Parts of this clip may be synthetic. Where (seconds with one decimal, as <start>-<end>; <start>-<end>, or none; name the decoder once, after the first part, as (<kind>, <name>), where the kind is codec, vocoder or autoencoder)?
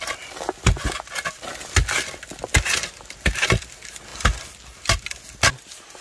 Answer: none